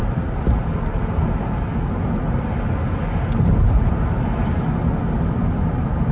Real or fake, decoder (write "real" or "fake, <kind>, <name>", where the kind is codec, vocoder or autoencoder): real